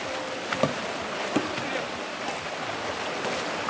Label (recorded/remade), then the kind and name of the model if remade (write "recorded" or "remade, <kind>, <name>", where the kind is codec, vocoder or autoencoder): recorded